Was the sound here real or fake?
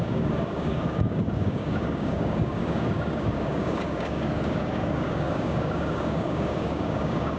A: fake